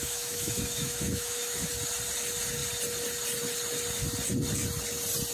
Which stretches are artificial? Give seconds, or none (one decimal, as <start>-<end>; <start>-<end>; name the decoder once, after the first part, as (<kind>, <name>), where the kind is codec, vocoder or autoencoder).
0.0-1.7 (autoencoder, DAC-VAE)